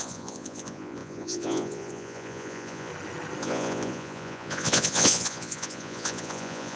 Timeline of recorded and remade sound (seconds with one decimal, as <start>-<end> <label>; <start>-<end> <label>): 0.0-2.9 remade; 2.9-3.4 recorded; 3.4-6.8 remade